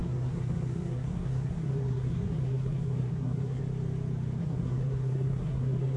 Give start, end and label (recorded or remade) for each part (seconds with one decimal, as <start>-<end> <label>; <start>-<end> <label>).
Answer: 0.0-3.6 remade; 3.6-4.4 recorded; 4.4-6.0 remade